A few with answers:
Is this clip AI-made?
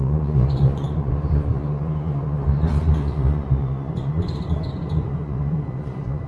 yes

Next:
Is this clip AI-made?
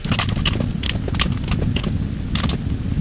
no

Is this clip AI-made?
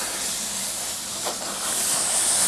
no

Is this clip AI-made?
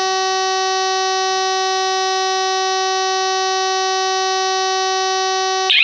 no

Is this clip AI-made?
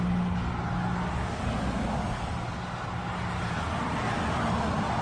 no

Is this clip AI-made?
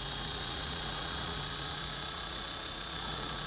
yes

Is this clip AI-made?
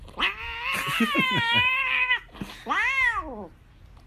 no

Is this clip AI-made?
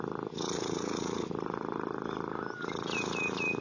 no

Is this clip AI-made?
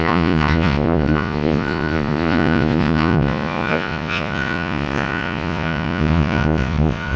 yes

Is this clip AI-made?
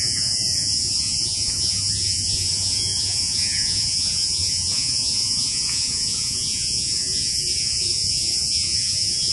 yes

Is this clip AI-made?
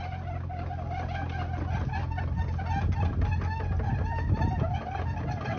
no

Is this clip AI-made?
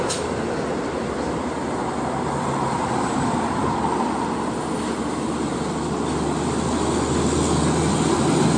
no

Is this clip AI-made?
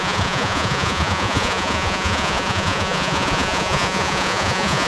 yes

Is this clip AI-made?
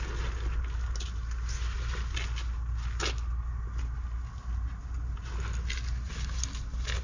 no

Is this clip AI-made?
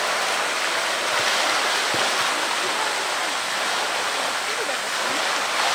no